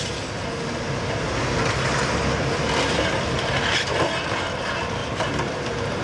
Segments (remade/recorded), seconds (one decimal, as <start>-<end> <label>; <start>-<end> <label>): 0.0-5.0 recorded; 5.0-6.0 remade